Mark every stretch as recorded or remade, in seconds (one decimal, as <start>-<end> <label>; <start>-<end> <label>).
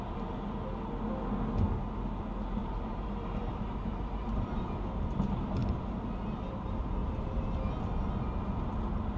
0.0-2.6 recorded; 2.6-4.7 remade; 4.7-9.2 recorded